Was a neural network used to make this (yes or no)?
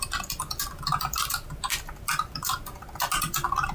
no